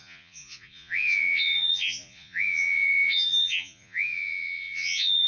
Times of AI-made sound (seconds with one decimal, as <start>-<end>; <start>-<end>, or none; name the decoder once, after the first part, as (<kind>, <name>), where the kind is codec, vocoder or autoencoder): 0.0-5.3 (vocoder, Vocos)